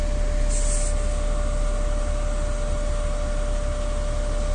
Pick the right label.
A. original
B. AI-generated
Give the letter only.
A